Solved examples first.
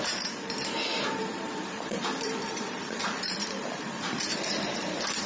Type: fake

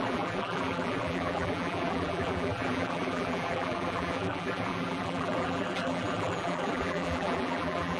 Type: fake